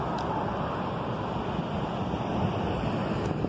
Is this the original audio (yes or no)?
yes